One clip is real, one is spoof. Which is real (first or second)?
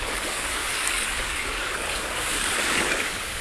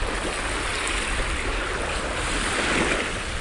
second